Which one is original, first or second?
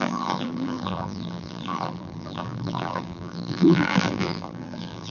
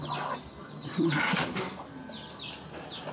second